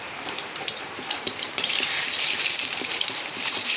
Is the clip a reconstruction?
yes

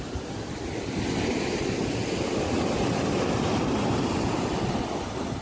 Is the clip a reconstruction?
no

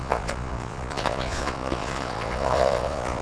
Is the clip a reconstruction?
yes